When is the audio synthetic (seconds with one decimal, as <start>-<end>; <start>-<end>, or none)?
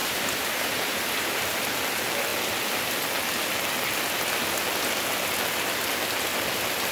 0.0-1.3